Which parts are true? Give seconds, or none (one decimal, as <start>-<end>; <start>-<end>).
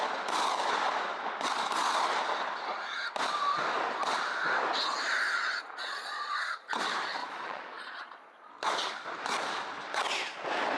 0.0-5.6; 6.8-7.2; 8.5-10.8